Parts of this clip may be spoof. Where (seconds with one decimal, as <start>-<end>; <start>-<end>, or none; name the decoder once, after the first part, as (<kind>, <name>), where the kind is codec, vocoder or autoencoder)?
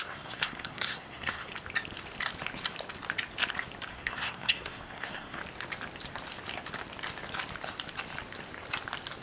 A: 0.0-1.5 (codec, SNAC); 3.9-5.4